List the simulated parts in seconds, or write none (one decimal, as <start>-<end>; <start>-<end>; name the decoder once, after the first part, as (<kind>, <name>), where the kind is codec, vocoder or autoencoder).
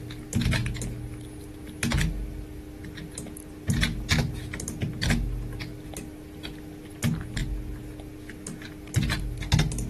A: none